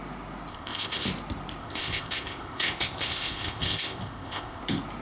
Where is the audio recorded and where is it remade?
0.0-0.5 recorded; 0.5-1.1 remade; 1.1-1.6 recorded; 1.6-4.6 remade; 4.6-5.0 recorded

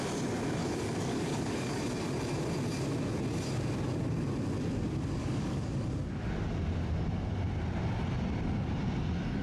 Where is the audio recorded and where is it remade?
0.0-0.6 recorded; 0.6-1.8 remade; 1.8-5.2 recorded; 5.2-5.9 remade; 5.9-9.4 recorded